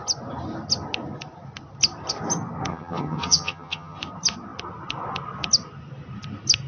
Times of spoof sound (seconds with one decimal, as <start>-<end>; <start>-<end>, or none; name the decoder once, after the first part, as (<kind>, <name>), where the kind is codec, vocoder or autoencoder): 2.7-4.0 (vocoder, HiFi-GAN)